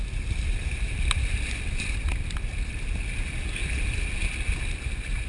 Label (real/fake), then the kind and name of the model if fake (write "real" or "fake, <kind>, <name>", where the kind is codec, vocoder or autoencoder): real